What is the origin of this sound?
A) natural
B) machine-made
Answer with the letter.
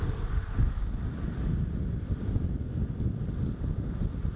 A